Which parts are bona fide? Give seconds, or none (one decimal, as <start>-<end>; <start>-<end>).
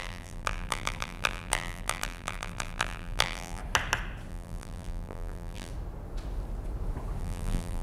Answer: 3.6-4.3; 5.7-7.2